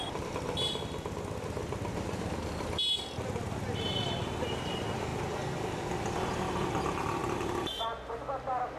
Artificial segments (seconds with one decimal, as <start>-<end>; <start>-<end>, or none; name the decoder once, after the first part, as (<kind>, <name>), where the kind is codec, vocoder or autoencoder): none